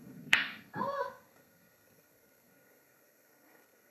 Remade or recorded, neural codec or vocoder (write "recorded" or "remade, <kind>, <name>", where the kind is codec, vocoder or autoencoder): remade, codec, SNAC